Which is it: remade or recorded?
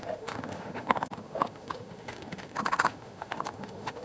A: remade